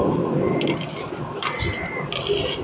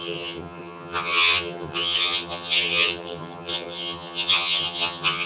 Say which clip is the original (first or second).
first